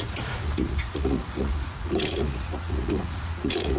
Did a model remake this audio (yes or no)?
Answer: yes